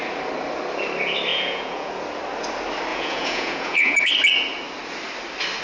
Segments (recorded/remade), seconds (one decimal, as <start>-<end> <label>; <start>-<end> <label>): 0.0-1.3 recorded; 1.3-1.9 remade; 1.9-2.9 recorded; 2.9-4.1 remade; 4.1-5.6 recorded